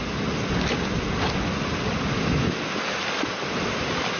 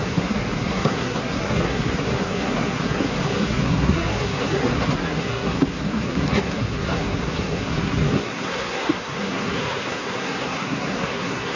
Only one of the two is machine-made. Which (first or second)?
second